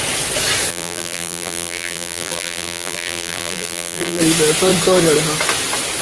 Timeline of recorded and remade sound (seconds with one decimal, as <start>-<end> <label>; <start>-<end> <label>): 0.0-0.7 recorded; 0.7-4.2 remade; 4.2-6.0 recorded